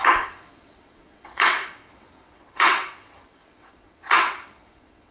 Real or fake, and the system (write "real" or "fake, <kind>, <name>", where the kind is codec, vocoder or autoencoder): fake, vocoder, WaveNeXt